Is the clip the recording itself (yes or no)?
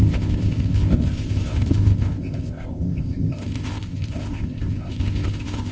no